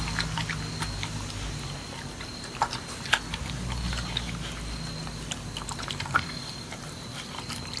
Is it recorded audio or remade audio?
recorded